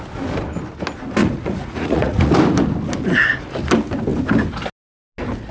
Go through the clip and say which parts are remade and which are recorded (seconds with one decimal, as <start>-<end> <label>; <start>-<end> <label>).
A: 0.0-1.2 recorded; 1.2-2.3 remade; 2.3-5.5 recorded